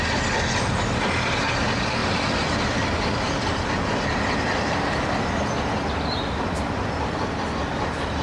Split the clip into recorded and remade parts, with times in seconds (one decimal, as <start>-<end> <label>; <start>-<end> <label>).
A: 0.0-8.2 recorded